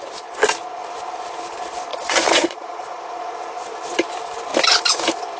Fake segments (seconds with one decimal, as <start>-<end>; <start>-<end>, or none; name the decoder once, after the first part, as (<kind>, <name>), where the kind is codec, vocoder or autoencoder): 1.9-3.0 (vocoder, Vocos)